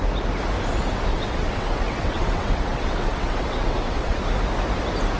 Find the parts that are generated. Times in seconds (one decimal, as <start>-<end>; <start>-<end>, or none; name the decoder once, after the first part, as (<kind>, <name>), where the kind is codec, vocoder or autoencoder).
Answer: 1.1-4.2 (vocoder, WaveNeXt)